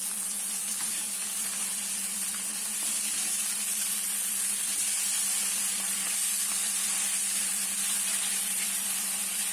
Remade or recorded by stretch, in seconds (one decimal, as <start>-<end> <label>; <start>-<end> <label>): 0.0-0.6 recorded; 0.6-1.4 remade; 1.4-9.5 recorded